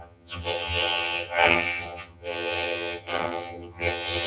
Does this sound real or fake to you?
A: fake